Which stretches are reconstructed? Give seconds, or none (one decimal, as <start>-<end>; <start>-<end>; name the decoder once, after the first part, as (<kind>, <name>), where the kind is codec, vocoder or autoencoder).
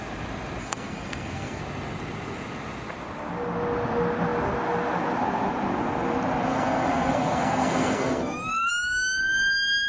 0.6-1.6 (codec, SNAC); 6.5-8.7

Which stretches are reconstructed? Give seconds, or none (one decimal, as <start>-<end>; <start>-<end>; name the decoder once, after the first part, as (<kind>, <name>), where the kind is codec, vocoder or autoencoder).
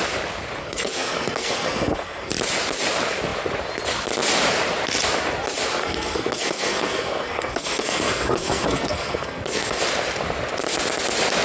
0.6-2.3 (codec, SNAC); 5.8-9.8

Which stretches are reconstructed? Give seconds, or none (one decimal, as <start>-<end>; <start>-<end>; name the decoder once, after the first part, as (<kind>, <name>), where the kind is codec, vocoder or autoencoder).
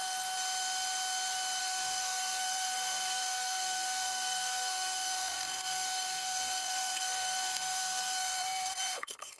1.6-9.4 (codec, SNAC)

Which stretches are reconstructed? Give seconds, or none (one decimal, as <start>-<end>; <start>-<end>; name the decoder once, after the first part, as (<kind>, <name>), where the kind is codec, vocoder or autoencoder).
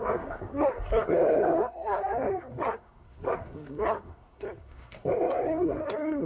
0.0-6.3 (codec, SNAC)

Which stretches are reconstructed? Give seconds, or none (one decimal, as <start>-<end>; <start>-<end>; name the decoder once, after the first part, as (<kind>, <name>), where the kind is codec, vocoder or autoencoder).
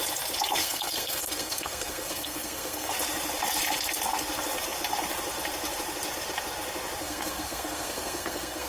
0.6-2.9 (codec, SNAC); 7.0-8.7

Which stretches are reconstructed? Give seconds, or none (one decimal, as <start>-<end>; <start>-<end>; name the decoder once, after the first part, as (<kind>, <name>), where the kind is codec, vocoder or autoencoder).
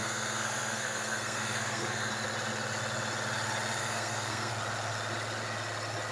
0.0-2.1 (codec, SNAC); 3.8-4.5